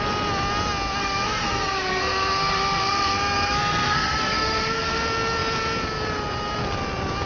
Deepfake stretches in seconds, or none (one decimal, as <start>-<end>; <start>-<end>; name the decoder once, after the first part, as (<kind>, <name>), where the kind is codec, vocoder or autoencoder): 1.0-5.0 (codec, SNAC)